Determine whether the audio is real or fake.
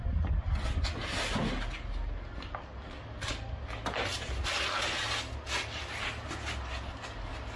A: real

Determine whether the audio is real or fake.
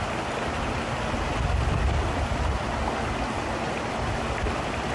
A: real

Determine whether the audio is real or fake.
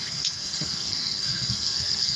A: fake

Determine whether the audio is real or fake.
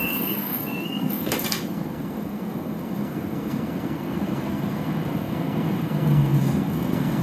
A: fake